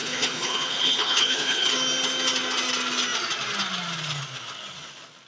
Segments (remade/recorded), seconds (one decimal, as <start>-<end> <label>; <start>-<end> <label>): 0.0-1.7 remade; 1.7-5.3 recorded